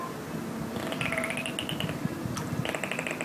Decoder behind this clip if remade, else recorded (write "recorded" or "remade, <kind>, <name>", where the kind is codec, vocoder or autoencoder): recorded